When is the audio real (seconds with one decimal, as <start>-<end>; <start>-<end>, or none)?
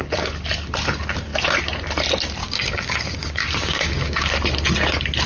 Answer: 0.0-2.4; 4.3-5.3